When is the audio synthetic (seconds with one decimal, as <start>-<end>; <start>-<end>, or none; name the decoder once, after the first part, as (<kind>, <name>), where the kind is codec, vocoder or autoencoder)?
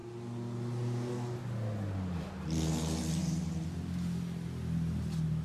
none